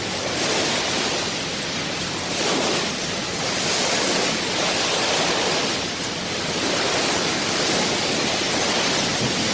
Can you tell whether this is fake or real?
real